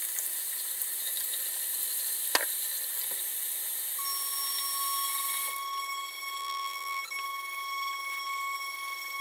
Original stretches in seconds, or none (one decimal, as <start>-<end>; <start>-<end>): 0.0-6.4; 7.0-9.2